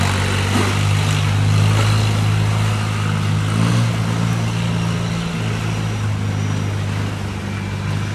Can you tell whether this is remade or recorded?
recorded